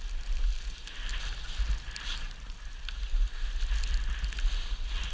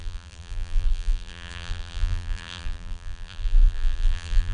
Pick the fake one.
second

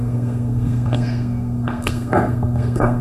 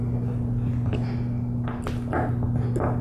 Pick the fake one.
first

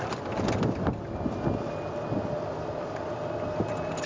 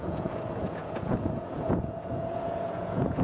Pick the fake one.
second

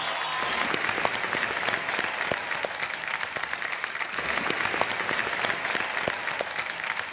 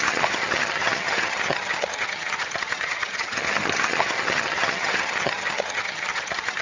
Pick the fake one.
second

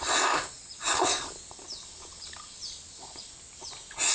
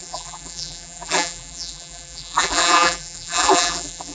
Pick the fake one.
second